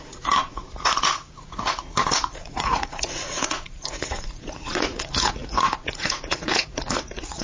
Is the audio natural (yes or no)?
no